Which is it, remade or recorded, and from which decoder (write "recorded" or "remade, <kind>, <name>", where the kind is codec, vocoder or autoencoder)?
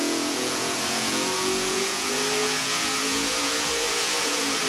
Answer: remade, vocoder, Vocos